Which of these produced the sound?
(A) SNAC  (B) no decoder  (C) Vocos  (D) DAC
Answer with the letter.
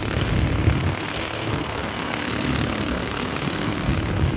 A